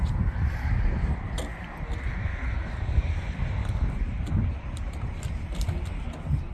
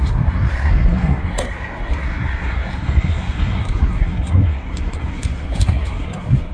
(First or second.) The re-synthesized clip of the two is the second